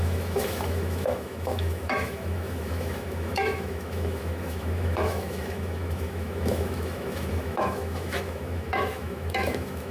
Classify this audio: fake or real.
fake